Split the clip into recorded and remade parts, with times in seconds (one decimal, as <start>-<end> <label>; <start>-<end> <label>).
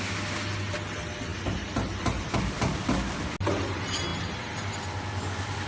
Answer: 0.0-5.7 recorded